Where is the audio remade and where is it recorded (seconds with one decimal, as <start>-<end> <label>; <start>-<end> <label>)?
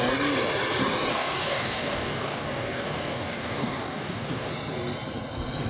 0.0-1.1 recorded; 1.1-4.5 remade; 4.5-5.7 recorded